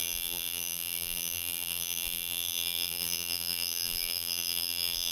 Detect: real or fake fake